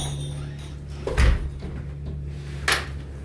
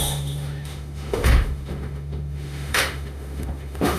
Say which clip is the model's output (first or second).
second